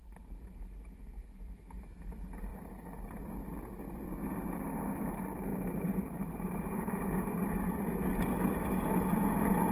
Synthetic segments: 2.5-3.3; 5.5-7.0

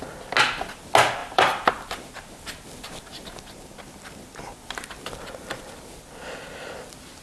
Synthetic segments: 1.2-1.7